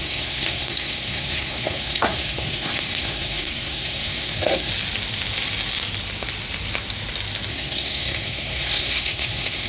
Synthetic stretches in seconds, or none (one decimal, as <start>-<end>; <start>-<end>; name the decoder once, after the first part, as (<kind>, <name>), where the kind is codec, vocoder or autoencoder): 0.0-4.7 (codec, SNAC); 7.5-9.7